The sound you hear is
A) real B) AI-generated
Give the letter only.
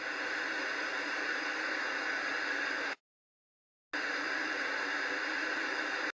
A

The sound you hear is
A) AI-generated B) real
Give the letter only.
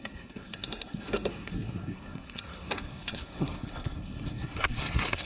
A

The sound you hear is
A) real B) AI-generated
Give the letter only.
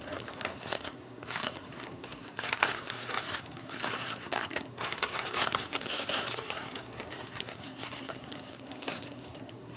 B